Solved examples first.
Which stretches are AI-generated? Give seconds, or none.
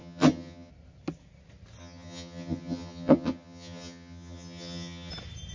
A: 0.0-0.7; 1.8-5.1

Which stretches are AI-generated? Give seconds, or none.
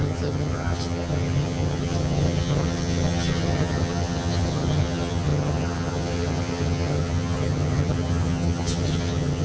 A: 0.0-9.4